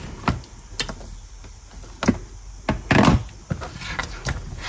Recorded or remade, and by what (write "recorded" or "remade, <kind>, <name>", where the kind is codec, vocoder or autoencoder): recorded